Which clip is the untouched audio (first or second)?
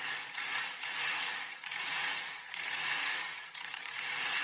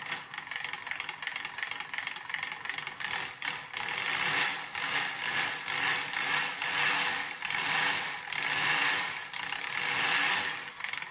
second